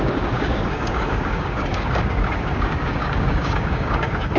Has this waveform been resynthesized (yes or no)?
yes